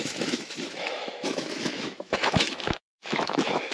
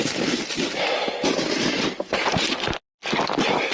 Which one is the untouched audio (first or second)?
second